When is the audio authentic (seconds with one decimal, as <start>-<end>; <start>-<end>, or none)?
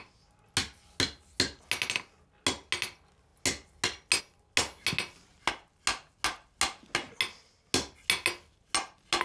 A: 0.0-9.2